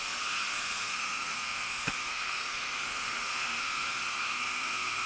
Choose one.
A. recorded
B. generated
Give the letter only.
B